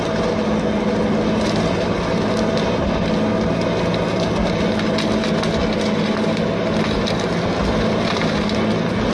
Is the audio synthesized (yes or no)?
no